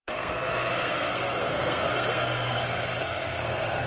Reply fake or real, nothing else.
fake